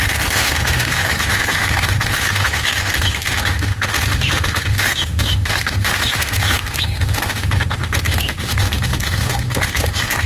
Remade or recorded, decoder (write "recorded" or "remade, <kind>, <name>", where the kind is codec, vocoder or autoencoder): remade, autoencoder, DAC-VAE